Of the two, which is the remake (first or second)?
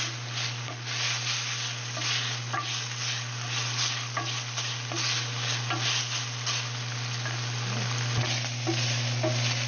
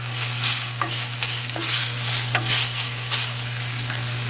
second